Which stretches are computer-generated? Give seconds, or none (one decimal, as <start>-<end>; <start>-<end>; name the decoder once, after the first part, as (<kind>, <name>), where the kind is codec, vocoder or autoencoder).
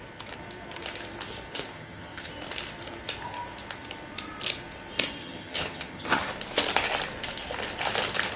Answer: 1.7-2.3 (vocoder, HiFi-GAN); 5.2-6.3